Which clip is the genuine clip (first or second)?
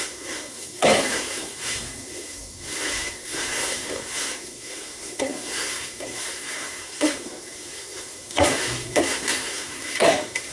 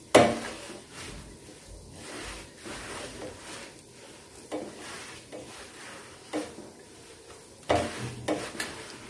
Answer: second